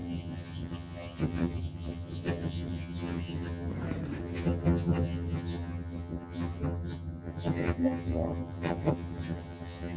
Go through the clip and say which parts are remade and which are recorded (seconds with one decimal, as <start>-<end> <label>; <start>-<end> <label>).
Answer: 0.0-3.7 remade; 3.7-4.2 recorded; 4.2-10.0 remade